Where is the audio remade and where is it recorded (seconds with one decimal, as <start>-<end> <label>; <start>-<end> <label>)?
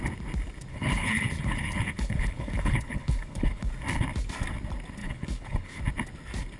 0.0-0.7 recorded; 0.7-3.7 remade; 3.7-5.0 recorded; 5.0-5.8 remade; 5.8-6.6 recorded